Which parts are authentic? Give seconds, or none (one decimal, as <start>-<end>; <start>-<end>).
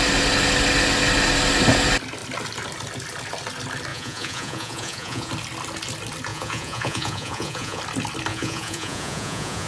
0.0-3.9; 5.3-6.3; 7.8-8.3